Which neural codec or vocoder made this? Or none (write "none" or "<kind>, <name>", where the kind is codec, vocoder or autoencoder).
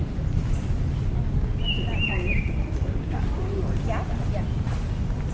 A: none